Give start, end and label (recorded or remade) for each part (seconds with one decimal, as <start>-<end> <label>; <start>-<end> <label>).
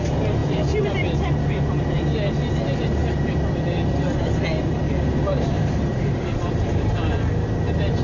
0.0-5.9 recorded; 5.9-7.0 remade; 7.0-8.0 recorded